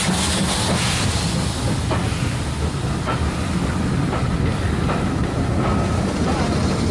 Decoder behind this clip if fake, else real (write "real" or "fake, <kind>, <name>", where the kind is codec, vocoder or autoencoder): real